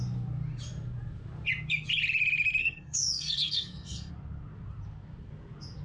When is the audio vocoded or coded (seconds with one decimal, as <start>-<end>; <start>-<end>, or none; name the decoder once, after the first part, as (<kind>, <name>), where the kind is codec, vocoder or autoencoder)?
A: 2.6-4.1 (codec, SNAC)